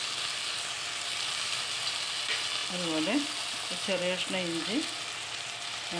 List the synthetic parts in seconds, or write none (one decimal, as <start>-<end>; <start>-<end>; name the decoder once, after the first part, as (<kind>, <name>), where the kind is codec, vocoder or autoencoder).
none